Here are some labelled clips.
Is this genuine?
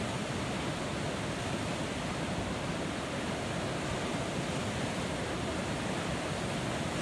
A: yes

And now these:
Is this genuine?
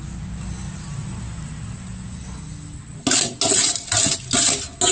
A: yes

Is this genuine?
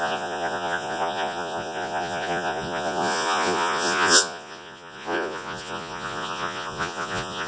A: no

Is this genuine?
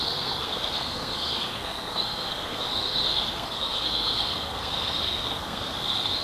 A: no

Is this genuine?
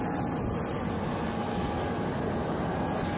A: yes